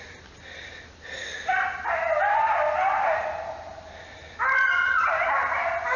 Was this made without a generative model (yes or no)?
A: yes